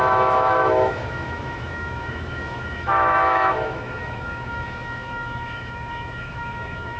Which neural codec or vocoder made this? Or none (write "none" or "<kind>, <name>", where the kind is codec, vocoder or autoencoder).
autoencoder, DAC-VAE